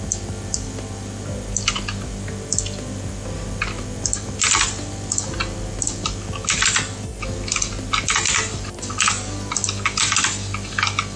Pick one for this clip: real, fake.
real